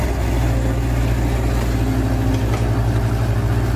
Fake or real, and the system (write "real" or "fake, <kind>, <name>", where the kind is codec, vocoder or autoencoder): real